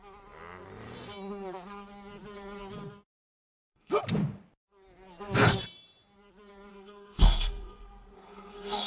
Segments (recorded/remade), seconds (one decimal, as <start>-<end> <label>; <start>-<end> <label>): 0.0-3.2 recorded; 3.2-4.0 remade; 4.0-6.7 recorded; 6.7-8.9 remade